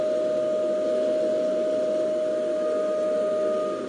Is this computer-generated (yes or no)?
no